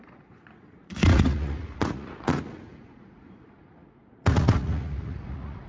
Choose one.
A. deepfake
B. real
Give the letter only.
A